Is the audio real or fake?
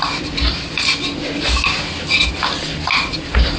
real